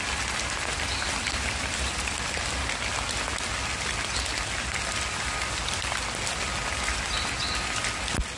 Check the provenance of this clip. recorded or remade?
recorded